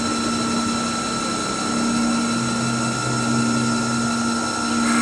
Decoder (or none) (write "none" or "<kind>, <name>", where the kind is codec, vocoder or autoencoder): none